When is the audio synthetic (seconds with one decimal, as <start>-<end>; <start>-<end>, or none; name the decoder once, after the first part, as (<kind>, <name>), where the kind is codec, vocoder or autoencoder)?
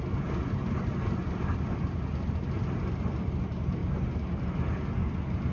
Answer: none